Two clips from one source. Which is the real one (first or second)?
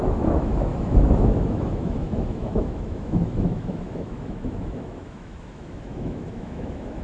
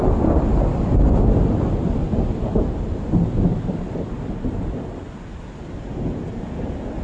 second